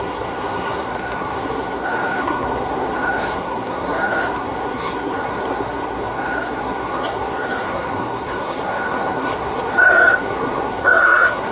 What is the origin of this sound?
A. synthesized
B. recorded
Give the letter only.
A